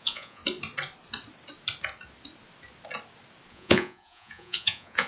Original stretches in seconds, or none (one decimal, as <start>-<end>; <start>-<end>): 0.4-3.5